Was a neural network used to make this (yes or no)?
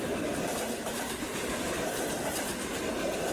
yes